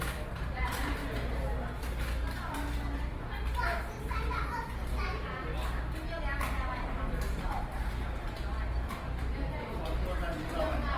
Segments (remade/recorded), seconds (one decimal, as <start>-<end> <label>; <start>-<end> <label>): 0.0-1.0 remade; 1.0-4.0 recorded; 4.0-4.9 remade; 4.9-7.1 recorded; 7.1-11.0 remade